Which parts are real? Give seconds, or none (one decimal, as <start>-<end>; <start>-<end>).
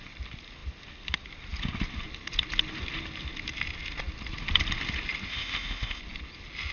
0.0-5.3; 6.0-6.7